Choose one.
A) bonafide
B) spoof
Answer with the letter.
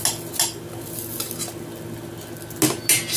A